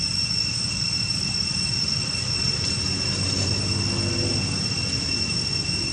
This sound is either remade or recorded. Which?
recorded